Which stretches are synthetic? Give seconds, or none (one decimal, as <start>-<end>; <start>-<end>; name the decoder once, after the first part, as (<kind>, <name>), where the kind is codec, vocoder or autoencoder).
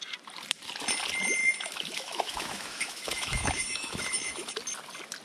1.4-4.5 (autoencoder, DAC-VAE)